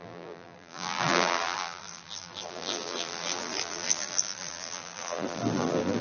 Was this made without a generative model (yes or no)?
no